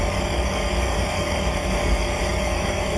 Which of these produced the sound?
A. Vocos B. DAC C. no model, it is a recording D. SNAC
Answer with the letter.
B